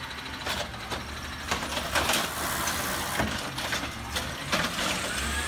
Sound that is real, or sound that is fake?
real